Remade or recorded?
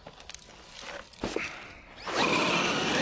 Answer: recorded